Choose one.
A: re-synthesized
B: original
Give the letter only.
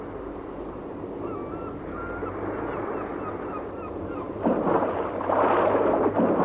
B